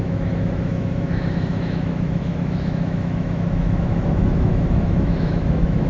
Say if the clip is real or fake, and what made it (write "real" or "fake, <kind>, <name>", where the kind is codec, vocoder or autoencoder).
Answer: fake, autoencoder, DAC-VAE